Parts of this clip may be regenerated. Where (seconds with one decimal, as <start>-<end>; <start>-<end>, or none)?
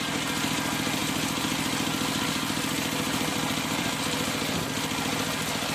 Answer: 3.3-4.0